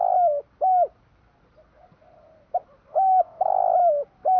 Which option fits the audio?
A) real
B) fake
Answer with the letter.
A